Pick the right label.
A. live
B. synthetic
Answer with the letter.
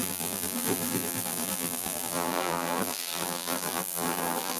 B